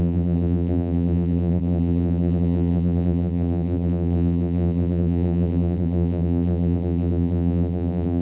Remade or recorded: remade